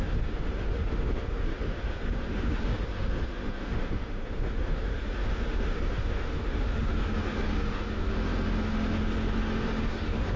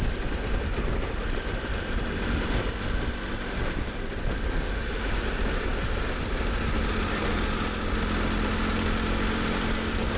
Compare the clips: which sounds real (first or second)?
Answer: second